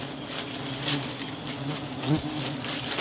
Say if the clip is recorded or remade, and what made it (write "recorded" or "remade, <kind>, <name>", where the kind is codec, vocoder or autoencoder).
recorded